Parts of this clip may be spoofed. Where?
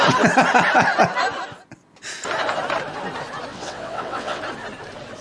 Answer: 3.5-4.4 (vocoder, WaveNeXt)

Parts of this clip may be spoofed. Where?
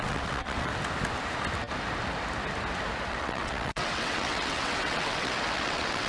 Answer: 0.0-0.7 (vocoder, WaveNeXt); 3.1-6.1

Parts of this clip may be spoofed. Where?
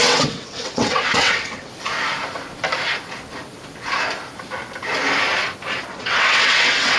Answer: 0.0-1.7 (vocoder, WaveNeXt); 5.9-7.0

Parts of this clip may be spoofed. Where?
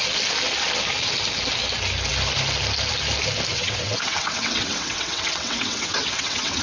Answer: 3.5-6.6 (vocoder, WaveNeXt)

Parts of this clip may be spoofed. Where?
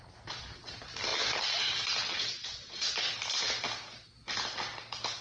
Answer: 2.0-2.9 (vocoder, WaveNeXt)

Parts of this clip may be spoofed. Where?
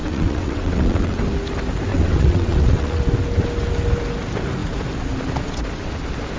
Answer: 0.0-1.2 (vocoder, WaveNeXt); 1.9-3.0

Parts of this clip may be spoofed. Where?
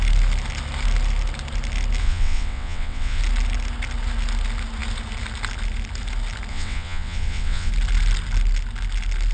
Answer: 2.0-3.2 (vocoder, WaveNeXt); 6.5-7.7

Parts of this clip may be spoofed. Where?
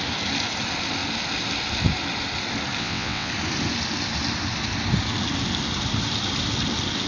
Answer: 2.8-3.3 (vocoder, WaveNeXt)